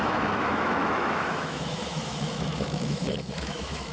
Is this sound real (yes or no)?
no